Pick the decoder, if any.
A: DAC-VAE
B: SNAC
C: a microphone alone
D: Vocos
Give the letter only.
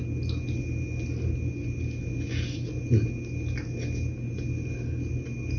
C